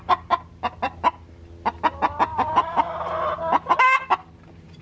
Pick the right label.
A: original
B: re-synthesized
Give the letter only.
A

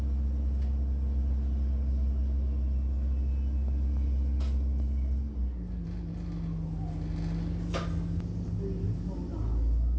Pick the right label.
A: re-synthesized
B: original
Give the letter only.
B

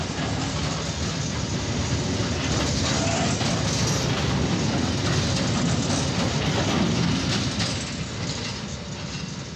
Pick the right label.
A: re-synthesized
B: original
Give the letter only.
B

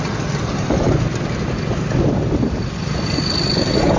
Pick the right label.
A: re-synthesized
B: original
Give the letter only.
B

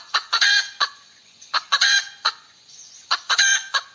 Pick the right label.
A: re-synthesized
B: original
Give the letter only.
A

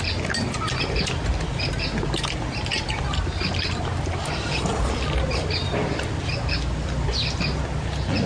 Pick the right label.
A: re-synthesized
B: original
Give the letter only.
B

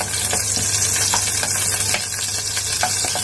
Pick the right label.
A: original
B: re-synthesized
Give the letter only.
A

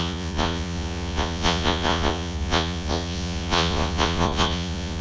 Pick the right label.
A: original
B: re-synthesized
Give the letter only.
B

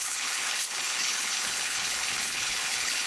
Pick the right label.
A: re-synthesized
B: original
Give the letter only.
A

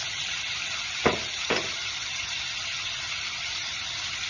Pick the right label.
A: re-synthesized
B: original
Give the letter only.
B